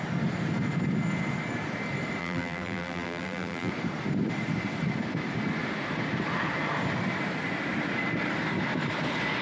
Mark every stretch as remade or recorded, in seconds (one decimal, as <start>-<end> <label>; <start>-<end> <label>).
0.0-2.2 recorded; 2.2-3.7 remade; 3.7-9.4 recorded